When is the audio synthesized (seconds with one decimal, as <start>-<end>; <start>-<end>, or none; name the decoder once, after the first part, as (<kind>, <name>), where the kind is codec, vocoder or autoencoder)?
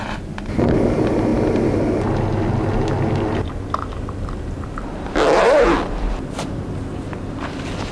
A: none